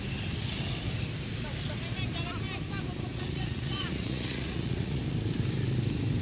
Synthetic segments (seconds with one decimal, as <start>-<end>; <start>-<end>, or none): 3.1-5.0